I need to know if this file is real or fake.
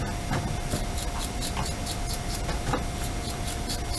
real